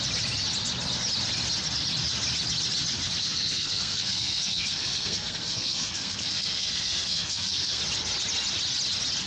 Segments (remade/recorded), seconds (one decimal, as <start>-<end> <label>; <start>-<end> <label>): 0.0-3.2 recorded; 3.2-7.8 remade; 7.8-9.3 recorded

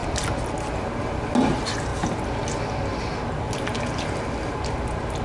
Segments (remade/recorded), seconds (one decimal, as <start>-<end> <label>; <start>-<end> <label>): 0.0-5.2 recorded

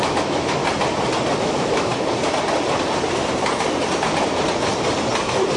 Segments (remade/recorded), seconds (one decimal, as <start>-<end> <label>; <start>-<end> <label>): 0.0-0.6 remade; 0.6-1.4 recorded; 1.4-1.9 remade; 1.9-5.6 recorded

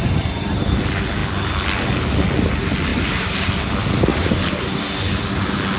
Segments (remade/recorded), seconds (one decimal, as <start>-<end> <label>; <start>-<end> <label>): 0.0-2.9 recorded; 2.9-3.5 remade; 3.5-4.1 recorded; 4.1-4.9 remade; 4.9-5.8 recorded